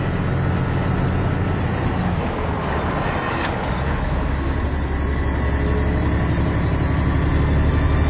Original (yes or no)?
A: yes